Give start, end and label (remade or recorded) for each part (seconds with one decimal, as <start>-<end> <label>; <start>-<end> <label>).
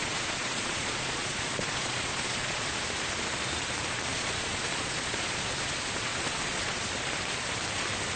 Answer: 0.0-2.7 remade; 2.7-4.1 recorded; 4.1-6.9 remade; 6.9-8.2 recorded